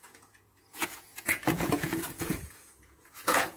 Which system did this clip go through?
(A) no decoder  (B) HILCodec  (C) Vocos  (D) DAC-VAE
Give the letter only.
C